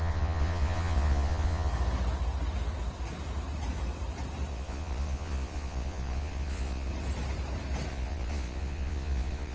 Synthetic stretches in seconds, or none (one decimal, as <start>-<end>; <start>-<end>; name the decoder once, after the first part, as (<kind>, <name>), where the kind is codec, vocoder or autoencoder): 0.0-1.7 (vocoder, Vocos); 4.5-6.9; 7.9-9.5